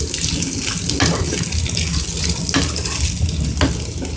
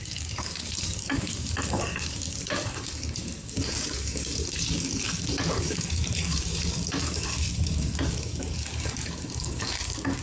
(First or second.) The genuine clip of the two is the first